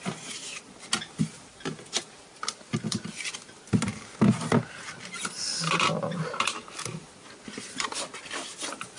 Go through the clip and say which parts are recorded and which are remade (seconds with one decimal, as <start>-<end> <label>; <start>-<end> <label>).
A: 0.0-9.0 recorded